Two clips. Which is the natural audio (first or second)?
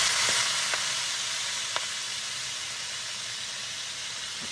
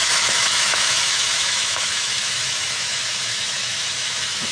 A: first